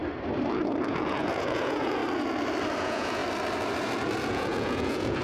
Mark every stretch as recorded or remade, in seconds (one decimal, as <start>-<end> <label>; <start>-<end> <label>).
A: 0.0-0.9 recorded; 0.9-2.0 remade; 2.0-2.8 recorded; 2.8-3.2 remade; 3.2-4.3 recorded; 4.3-5.2 remade